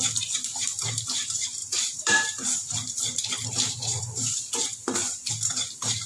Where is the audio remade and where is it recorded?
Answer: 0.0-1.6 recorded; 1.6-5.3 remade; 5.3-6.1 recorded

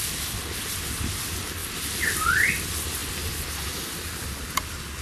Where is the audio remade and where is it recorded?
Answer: 0.0-5.0 recorded